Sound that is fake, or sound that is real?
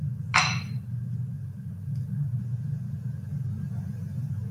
real